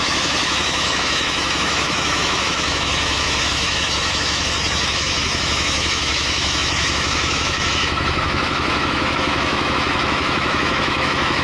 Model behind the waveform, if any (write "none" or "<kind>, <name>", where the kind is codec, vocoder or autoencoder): autoencoder, DAC-VAE